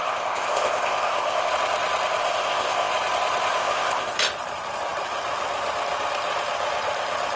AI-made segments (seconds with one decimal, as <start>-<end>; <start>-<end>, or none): 0.0-1.5; 2.2-2.9; 3.6-4.1